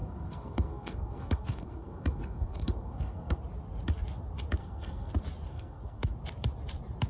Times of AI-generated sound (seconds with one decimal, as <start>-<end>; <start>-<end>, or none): 0.0-3.4; 4.6-5.1; 5.5-6.1